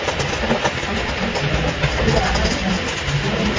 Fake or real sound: real